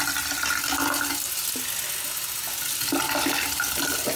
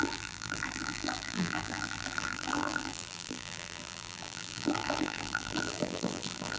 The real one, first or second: first